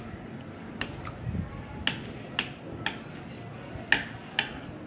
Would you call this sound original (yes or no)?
yes